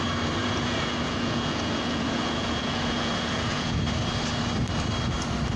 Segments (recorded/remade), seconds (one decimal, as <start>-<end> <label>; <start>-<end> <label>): 0.0-0.4 recorded; 0.4-3.8 remade; 3.8-5.6 recorded